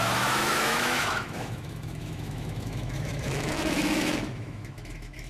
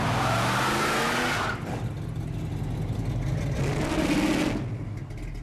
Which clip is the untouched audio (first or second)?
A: second